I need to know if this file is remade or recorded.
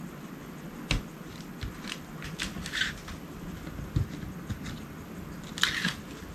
recorded